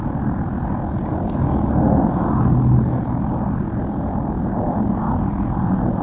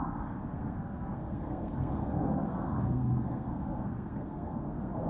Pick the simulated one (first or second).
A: second